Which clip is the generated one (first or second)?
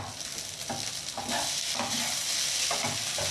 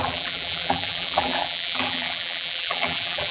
second